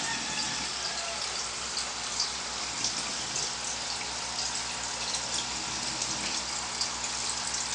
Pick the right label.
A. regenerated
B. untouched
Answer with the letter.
B